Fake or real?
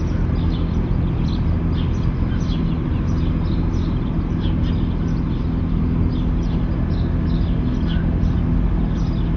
real